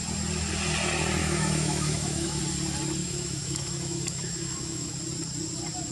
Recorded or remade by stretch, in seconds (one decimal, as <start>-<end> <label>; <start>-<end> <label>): 0.0-1.2 recorded; 1.2-2.4 remade; 2.4-3.0 recorded; 3.0-5.0 remade; 5.0-5.9 recorded

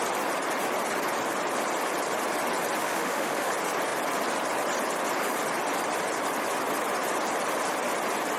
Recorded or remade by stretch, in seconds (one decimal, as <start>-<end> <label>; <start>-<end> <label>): 0.0-2.8 recorded; 2.8-3.5 remade; 3.5-8.4 recorded

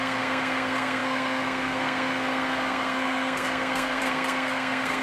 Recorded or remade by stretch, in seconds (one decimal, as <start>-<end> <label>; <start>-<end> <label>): 0.0-5.0 remade

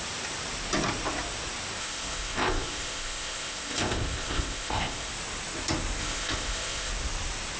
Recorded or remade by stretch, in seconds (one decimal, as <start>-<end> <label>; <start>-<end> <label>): 0.0-1.8 recorded; 1.8-5.1 remade; 5.1-6.0 recorded; 6.0-6.9 remade; 6.9-7.6 recorded

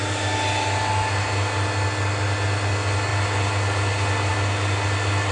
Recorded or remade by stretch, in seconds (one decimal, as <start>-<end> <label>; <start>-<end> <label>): 0.0-5.3 recorded

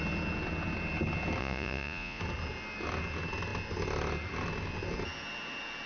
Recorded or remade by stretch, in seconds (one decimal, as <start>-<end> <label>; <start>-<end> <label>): 0.0-1.4 recorded; 1.4-2.2 remade; 2.2-5.9 recorded

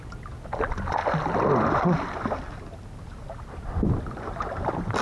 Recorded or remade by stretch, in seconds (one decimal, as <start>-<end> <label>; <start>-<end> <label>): 0.0-5.0 recorded